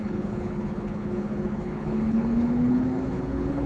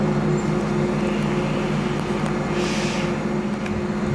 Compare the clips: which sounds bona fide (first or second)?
second